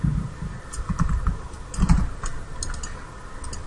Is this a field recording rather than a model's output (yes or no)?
yes